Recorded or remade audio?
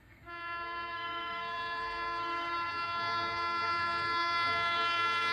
remade